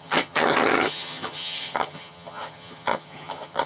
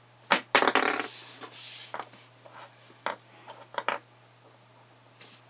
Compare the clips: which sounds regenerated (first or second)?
first